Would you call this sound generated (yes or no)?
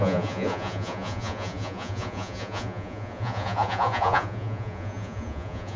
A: yes